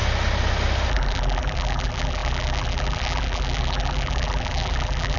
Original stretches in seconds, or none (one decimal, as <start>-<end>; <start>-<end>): 0.0-0.9

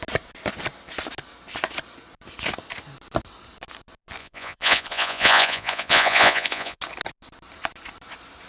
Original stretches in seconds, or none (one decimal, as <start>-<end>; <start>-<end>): 0.0-4.2; 6.8-8.5

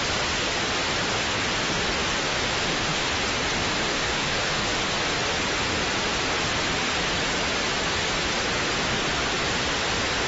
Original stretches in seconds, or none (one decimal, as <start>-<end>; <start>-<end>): 0.0-2.2; 3.1-3.6; 4.8-10.3

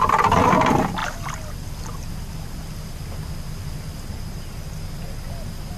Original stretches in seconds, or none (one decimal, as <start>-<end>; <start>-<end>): 0.0-5.8

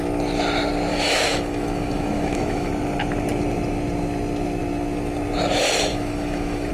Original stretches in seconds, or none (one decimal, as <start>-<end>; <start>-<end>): 0.0-0.9; 2.7-5.9

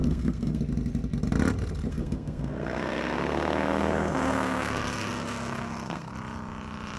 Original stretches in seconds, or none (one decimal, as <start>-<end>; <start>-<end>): 0.6-1.9; 6.1-7.0

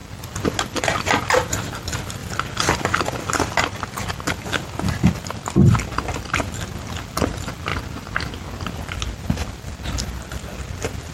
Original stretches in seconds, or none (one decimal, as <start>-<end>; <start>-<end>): 0.0-11.1